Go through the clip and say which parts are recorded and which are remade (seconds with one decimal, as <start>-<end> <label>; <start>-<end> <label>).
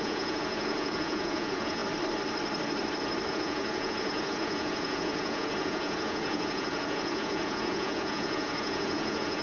0.0-1.8 remade; 1.8-3.3 recorded; 3.3-9.4 remade